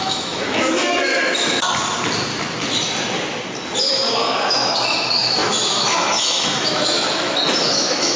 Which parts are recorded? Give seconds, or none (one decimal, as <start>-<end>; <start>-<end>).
1.1-3.8